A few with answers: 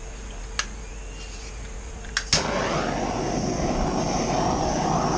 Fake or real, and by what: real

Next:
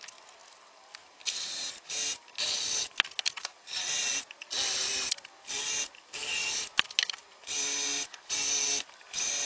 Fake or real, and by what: real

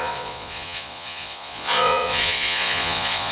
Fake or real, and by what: fake, vocoder, Vocos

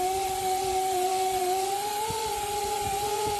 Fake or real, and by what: fake, vocoder, Vocos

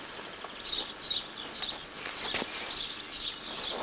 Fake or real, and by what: real